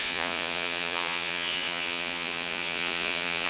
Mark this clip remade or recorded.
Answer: remade